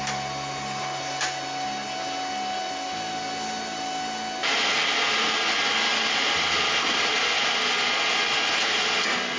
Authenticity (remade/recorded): recorded